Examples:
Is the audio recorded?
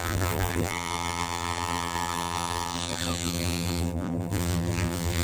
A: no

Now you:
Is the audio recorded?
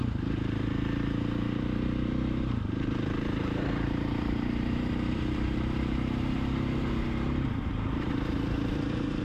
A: no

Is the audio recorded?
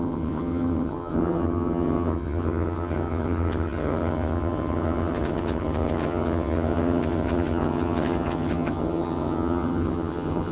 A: no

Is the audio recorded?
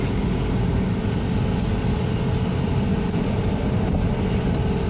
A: yes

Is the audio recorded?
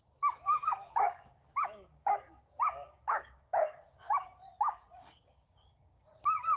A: no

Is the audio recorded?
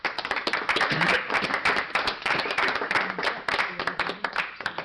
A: no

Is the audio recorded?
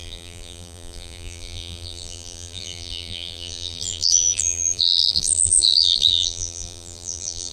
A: no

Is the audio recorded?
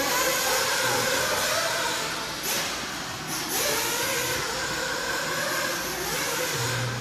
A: yes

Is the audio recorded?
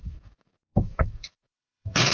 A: no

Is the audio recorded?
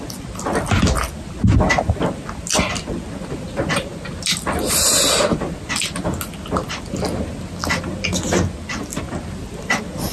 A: yes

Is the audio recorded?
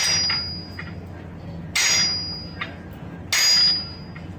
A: yes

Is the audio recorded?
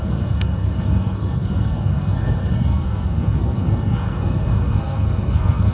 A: no